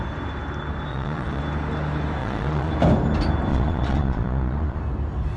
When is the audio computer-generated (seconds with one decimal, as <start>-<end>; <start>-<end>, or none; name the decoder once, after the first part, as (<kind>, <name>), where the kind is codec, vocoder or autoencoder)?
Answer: 0.9-1.4 (vocoder, Vocos); 2.2-2.7; 3.5-4.8